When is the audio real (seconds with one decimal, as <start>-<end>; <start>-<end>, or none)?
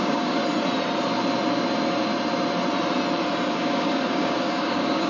0.4-3.5